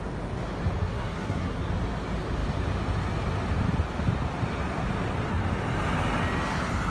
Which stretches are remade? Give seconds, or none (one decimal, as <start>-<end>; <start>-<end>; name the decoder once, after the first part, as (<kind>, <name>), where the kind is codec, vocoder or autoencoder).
0.8-1.6 (codec, SNAC)